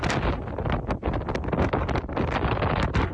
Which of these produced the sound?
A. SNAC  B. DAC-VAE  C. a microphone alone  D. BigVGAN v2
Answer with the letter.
C